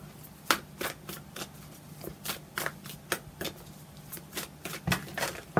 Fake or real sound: real